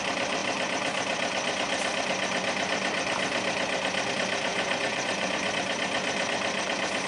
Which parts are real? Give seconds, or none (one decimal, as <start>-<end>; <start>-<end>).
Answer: 0.0-4.5; 5.5-7.1